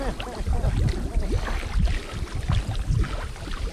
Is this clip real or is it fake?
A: real